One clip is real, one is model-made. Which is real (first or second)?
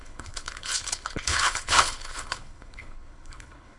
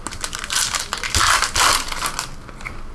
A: second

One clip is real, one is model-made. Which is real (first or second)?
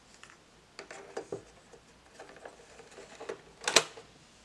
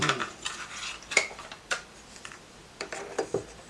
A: first